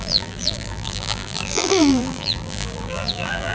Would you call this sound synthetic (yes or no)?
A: yes